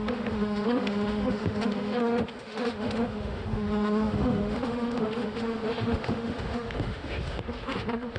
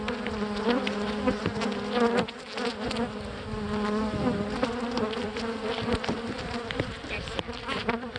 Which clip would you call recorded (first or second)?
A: second